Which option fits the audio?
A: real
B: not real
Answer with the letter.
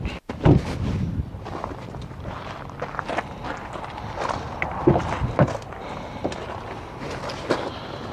A